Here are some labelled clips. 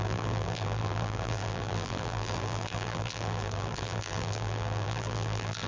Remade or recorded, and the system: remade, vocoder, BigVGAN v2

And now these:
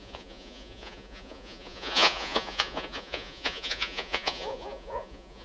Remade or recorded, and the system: remade, vocoder, Vocos